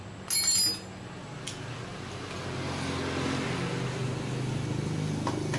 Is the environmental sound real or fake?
real